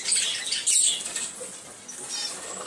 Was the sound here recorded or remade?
recorded